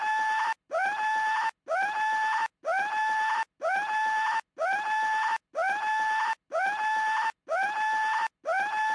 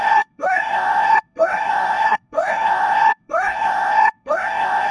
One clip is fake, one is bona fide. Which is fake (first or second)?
second